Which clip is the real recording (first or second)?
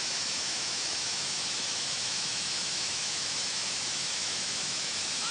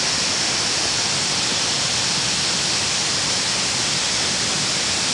second